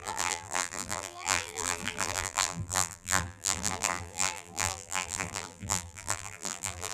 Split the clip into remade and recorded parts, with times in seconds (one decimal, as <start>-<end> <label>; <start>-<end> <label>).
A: 0.0-6.9 remade